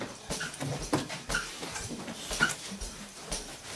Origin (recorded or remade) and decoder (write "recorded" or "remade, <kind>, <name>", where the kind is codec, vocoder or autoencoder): remade, vocoder, BigVGAN v2